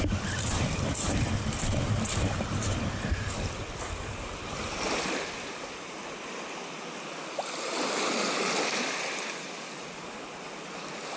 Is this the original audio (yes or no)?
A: yes